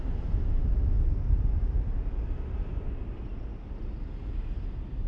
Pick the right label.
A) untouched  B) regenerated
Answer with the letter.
A